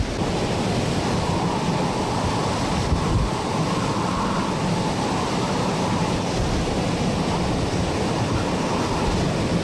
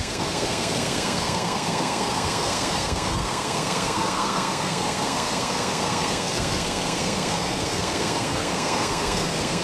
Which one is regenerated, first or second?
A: second